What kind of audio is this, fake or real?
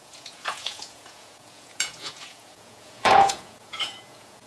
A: fake